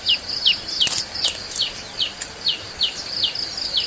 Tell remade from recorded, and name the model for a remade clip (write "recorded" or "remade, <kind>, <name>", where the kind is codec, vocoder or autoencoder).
recorded